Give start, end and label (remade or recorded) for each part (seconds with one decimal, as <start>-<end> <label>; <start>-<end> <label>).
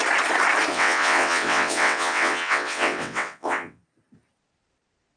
0.0-0.7 recorded; 0.7-3.8 remade; 3.8-5.2 recorded